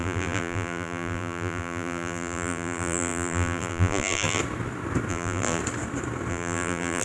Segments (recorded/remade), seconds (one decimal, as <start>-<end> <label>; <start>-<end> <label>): 0.0-4.4 remade; 4.4-5.1 recorded; 5.1-5.6 remade; 5.6-6.3 recorded; 6.3-7.0 remade